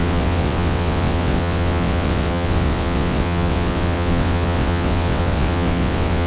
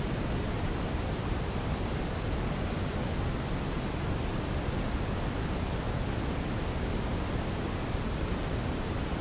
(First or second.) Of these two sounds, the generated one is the first